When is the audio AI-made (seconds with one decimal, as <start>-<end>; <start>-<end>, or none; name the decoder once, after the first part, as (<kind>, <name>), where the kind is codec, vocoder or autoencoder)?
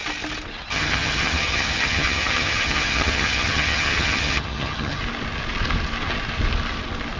0.7-5.0 (vocoder, HiFi-GAN)